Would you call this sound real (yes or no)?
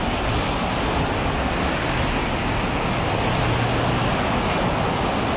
yes